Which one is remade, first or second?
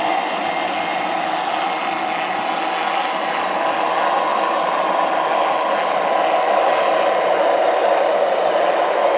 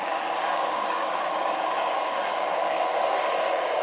second